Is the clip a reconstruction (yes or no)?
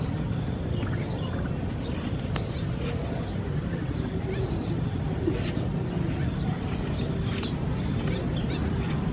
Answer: no